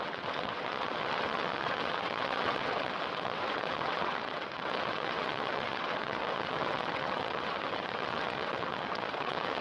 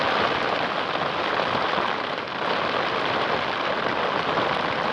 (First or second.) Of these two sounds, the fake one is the first